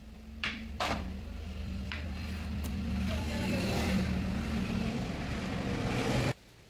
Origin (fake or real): fake